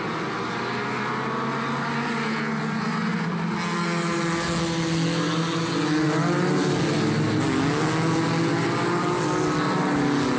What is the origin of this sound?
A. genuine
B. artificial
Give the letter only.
A